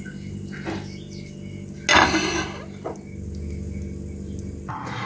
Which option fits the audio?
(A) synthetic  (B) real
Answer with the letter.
B